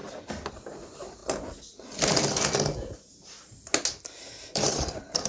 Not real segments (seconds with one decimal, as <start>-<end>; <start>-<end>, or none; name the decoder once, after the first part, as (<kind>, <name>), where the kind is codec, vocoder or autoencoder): 0.5-1.2 (vocoder, BigVGAN v2); 4.4-5.3